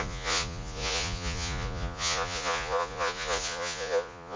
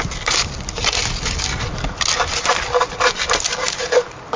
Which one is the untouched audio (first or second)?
second